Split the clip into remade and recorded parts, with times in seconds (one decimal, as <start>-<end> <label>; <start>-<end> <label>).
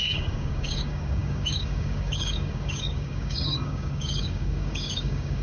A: 0.0-5.4 remade